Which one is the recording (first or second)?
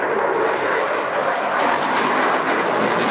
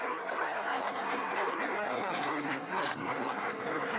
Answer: first